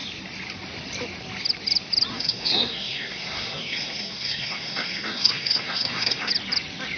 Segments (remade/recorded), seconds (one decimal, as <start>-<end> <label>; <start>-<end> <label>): 0.0-2.1 recorded; 2.1-6.3 remade; 6.3-7.0 recorded